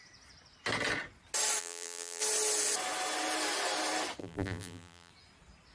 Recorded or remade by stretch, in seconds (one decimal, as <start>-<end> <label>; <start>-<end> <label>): 0.0-1.6 recorded; 1.6-2.2 remade; 2.2-4.2 recorded; 4.2-5.1 remade; 5.1-5.7 recorded